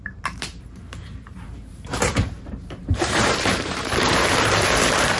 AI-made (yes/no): yes